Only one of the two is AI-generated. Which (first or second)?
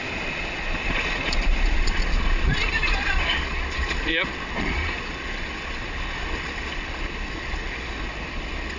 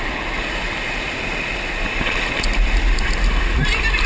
first